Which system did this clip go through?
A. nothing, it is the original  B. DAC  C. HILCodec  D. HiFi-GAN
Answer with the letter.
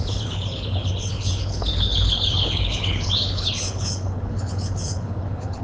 C